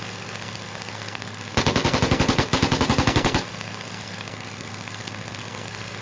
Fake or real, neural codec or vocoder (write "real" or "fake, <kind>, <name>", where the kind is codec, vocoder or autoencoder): fake, codec, SNAC